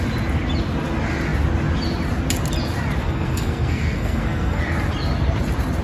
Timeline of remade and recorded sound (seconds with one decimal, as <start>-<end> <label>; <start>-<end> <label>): 0.0-3.0 recorded; 3.0-4.6 remade; 4.6-5.8 recorded